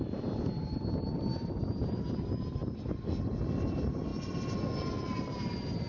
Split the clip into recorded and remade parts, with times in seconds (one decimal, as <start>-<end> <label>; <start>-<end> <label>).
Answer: 0.0-2.6 remade; 2.6-3.6 recorded; 3.6-4.1 remade; 4.1-5.1 recorded; 5.1-5.9 remade

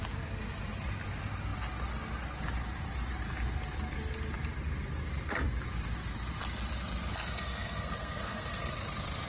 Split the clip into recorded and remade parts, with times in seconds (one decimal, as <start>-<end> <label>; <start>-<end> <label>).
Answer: 0.0-7.1 recorded; 7.1-8.7 remade; 8.7-9.3 recorded

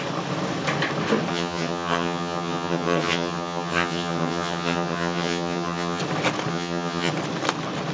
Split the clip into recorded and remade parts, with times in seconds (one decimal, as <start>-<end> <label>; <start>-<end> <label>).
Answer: 0.0-1.3 recorded; 1.3-6.0 remade; 6.0-6.5 recorded; 6.5-7.1 remade; 7.1-7.9 recorded

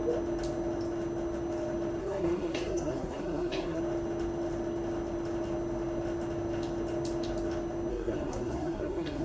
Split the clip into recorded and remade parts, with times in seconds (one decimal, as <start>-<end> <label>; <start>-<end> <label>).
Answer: 0.0-2.0 recorded; 2.0-3.8 remade; 3.8-7.9 recorded; 7.9-9.2 remade

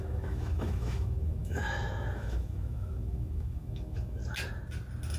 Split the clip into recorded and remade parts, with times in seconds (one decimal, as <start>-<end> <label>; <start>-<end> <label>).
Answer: 0.0-4.2 remade; 4.2-5.2 recorded

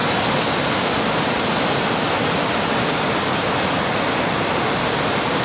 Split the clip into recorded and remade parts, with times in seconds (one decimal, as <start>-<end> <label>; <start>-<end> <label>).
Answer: 0.0-5.4 recorded